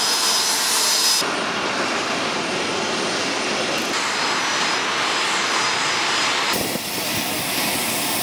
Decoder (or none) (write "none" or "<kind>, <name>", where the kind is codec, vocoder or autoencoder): none